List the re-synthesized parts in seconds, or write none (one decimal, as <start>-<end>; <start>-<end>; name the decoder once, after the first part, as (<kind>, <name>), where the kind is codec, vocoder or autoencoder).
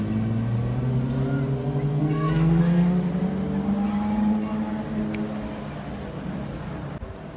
1.9-2.6 (codec, SNAC)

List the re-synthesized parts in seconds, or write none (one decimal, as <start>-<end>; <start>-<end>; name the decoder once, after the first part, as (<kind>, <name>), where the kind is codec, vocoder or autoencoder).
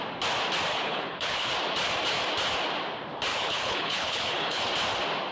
0.7-1.5 (codec, HILCodec); 3.3-4.6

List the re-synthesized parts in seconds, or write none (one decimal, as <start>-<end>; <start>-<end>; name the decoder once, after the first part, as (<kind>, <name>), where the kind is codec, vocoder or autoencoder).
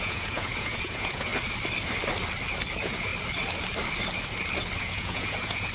0.0-1.3 (vocoder, Vocos); 2.7-3.1; 4.8-5.7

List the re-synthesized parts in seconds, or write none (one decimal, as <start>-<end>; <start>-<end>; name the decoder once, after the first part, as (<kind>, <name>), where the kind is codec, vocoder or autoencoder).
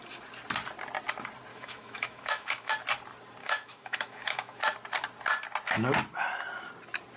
1.5-2.7 (autoencoder, DAC-VAE); 3.4-4.6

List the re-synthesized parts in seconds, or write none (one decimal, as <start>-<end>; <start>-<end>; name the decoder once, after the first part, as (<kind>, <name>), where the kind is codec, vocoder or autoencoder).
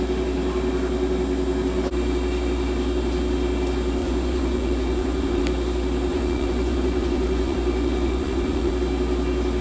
4.0-5.4 (vocoder, Vocos); 6.1-8.7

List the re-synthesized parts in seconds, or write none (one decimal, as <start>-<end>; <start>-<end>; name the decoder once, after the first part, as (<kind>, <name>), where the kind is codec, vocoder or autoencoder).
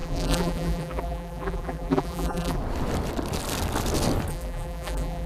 0.0-2.6 (vocoder, BigVGAN v2); 4.3-5.3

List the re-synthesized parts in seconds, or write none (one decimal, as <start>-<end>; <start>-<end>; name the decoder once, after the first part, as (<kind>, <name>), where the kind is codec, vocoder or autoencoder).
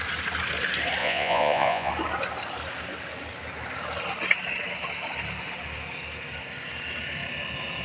1.0-1.9 (vocoder, Vocos)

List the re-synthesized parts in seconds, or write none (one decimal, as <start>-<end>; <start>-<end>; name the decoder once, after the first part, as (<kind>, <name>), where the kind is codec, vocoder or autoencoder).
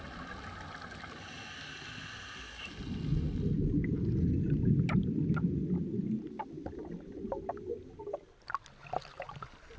none